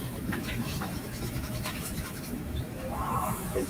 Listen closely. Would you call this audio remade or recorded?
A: remade